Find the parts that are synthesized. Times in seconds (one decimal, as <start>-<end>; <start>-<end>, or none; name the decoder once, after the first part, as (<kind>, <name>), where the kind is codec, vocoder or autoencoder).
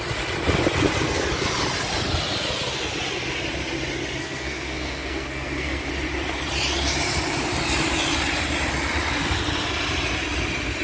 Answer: 4.2-5.9 (codec, SNAC)